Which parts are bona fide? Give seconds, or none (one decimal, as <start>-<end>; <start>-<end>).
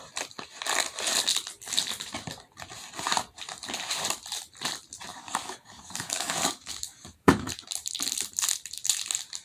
0.0-5.1; 7.5-9.4